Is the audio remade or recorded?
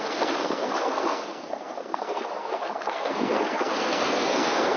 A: remade